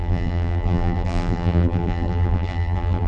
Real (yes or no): no